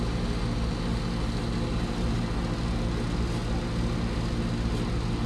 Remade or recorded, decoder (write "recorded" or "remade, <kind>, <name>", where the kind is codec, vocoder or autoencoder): recorded